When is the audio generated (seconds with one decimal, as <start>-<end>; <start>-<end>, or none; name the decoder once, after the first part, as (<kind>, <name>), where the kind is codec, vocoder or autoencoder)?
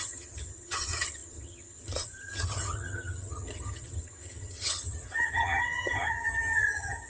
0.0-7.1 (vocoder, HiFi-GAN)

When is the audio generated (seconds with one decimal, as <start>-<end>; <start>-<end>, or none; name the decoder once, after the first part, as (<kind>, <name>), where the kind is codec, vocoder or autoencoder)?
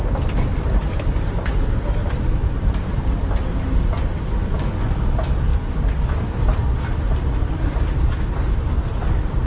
2.0-3.2 (vocoder, BigVGAN v2)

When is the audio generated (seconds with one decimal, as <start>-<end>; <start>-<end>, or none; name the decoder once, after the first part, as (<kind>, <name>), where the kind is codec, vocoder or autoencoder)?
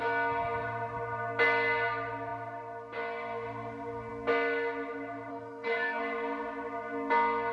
5.3-6.0 (codec, SNAC)